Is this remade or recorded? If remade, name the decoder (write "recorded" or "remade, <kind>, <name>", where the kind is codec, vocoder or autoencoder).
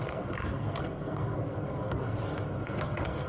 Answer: remade, codec, SNAC